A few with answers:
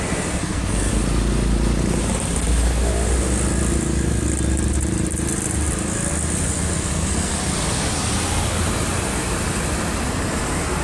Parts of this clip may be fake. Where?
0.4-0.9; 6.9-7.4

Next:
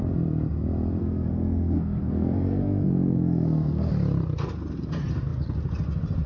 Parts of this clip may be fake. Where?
1.0-3.9

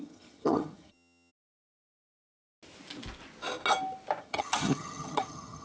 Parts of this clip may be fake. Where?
0.0-1.3; 4.2-5.6

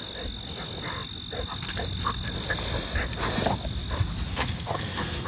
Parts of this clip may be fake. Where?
4.3-5.3

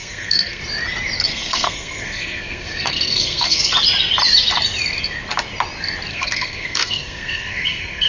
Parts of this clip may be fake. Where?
0.0-0.6; 1.3-3.6; 6.1-8.1

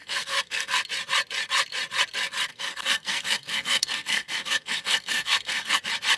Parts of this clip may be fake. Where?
0.0-0.8; 2.5-5.8

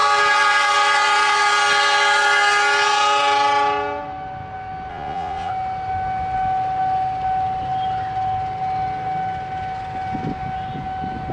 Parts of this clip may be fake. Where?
4.9-5.5

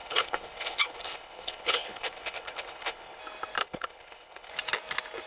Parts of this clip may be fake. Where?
0.0-3.2; 3.6-4.5